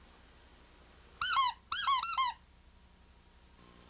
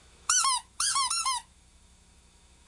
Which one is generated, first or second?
second